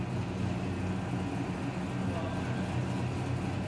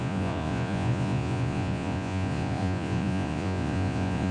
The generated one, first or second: second